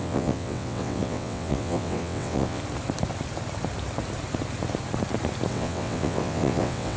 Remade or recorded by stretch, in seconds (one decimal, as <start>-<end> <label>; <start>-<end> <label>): 0.0-2.6 remade; 2.6-5.5 recorded; 5.5-7.0 remade